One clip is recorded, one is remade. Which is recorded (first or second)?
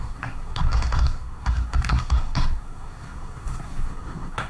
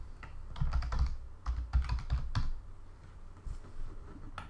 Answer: second